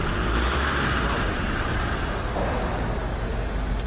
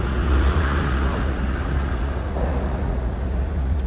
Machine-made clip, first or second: second